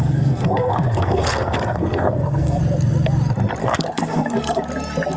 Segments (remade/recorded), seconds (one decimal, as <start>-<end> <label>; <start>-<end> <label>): 0.0-2.6 remade; 2.6-3.6 recorded; 3.6-4.6 remade; 4.6-5.2 recorded